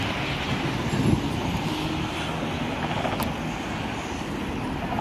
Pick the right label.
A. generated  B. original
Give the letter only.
B